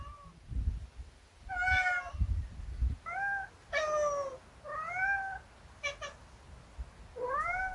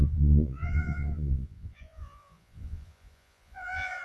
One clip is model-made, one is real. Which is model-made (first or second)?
second